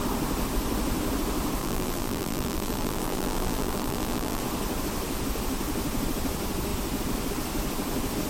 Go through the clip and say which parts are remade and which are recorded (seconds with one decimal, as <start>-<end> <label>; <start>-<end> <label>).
0.0-1.6 recorded; 1.6-4.4 remade; 4.4-8.3 recorded

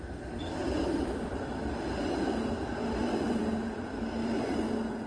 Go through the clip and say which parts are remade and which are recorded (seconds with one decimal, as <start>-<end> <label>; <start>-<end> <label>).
0.0-0.6 recorded; 0.6-1.9 remade; 1.9-3.0 recorded; 3.0-4.5 remade; 4.5-5.1 recorded

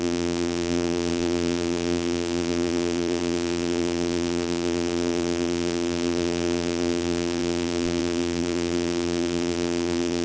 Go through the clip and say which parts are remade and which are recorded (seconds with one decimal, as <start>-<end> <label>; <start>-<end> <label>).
0.0-10.2 remade